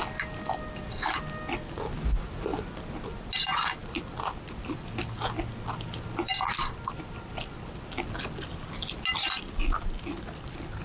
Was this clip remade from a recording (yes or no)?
no